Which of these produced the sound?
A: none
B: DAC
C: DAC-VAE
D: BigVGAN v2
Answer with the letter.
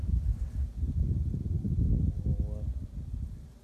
A